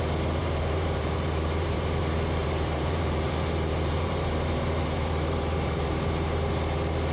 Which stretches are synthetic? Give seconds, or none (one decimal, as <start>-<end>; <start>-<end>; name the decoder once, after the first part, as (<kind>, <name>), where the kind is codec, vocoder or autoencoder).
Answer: 0.4-2.0 (vocoder, BigVGAN v2); 2.4-6.5